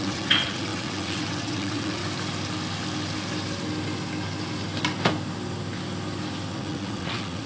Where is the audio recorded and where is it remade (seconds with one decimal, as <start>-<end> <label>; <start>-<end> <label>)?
0.0-2.0 remade; 2.0-6.5 recorded; 6.5-7.5 remade